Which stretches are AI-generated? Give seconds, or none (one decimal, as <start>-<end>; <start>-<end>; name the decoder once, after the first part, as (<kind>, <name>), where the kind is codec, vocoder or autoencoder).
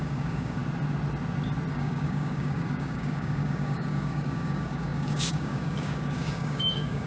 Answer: 0.0-0.6 (codec, DAC); 1.7-7.1